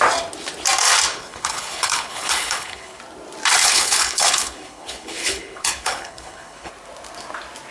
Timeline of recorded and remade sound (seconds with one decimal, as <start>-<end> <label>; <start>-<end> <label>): 0.0-1.1 recorded; 1.1-3.0 remade; 3.0-3.6 recorded; 3.6-6.7 remade; 6.7-7.7 recorded